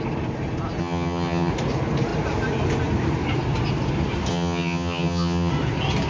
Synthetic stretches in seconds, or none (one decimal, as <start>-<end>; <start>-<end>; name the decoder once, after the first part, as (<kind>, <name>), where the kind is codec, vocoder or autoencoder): 0.8-1.5 (vocoder, HiFi-GAN); 4.3-5.5